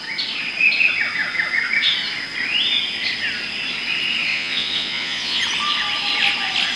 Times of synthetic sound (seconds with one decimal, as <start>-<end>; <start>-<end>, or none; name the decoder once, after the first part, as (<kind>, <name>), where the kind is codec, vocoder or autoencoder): 4.3-5.4 (vocoder, Vocos)